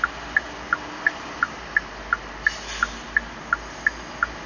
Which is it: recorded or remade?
recorded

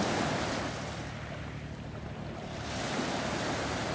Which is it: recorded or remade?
recorded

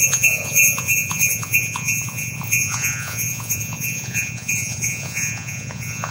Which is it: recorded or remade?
remade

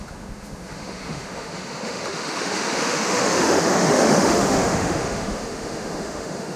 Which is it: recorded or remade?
remade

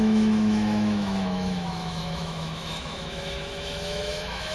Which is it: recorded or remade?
remade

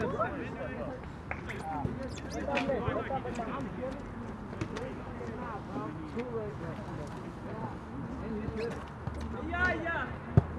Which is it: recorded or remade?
recorded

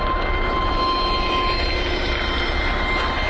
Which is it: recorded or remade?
recorded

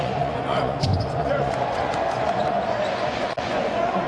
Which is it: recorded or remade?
remade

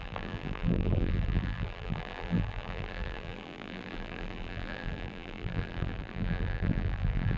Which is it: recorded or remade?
remade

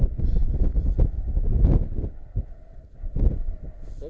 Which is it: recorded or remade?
recorded